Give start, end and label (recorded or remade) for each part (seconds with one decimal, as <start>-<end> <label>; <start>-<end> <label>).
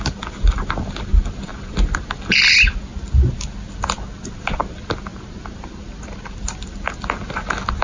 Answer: 0.0-5.1 recorded; 5.1-6.9 remade; 6.9-7.8 recorded